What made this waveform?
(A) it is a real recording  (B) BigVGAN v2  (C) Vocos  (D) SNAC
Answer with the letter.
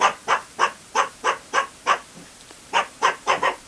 B